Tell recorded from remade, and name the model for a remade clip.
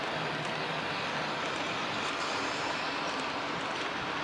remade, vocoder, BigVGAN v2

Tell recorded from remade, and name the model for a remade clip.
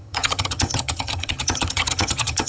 remade, vocoder, HiFi-GAN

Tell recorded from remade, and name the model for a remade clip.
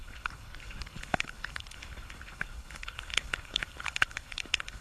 remade, codec, HILCodec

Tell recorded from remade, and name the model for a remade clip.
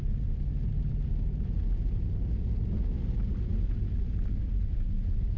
recorded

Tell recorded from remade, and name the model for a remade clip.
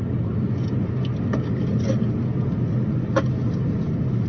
recorded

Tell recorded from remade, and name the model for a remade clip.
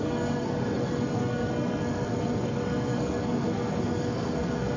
remade, codec, SNAC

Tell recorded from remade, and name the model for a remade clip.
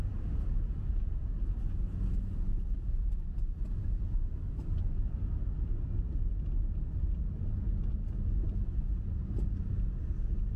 recorded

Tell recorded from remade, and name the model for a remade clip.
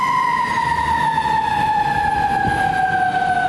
recorded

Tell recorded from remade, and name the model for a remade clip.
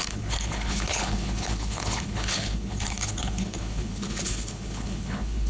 remade, codec, HILCodec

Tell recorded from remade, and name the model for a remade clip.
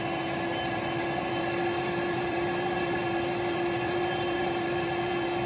remade, vocoder, BigVGAN v2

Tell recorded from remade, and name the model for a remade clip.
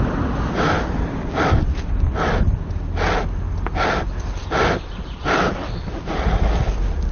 recorded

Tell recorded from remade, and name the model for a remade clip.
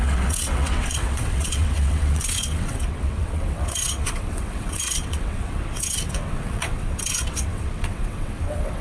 remade, vocoder, WaveNeXt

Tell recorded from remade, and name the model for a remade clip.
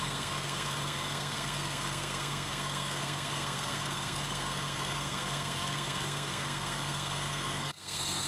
remade, codec, SNAC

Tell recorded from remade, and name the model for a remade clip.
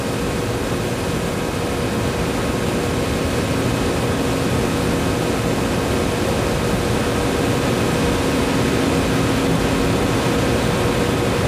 recorded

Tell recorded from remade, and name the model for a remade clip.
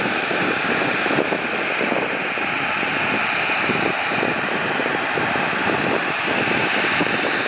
remade, vocoder, BigVGAN v2